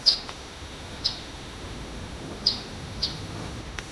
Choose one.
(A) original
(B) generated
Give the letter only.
B